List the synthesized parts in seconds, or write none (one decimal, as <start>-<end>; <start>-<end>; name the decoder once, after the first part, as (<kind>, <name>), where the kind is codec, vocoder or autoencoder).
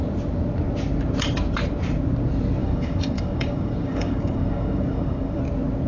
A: 2.6-5.4 (codec, DAC)